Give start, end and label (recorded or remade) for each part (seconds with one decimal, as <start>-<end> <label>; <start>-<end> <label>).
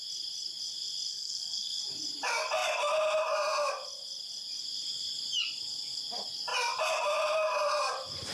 0.0-1.1 recorded; 1.1-1.8 remade; 1.8-8.3 recorded